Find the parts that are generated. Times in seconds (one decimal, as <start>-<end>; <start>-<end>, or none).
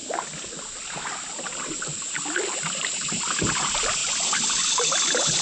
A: none